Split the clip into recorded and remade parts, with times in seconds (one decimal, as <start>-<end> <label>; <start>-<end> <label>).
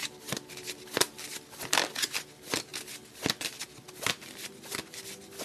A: 0.0-5.4 recorded